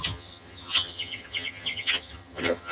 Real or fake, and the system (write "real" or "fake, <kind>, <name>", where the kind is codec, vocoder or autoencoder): fake, vocoder, HiFi-GAN